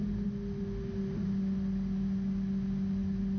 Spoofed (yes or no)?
no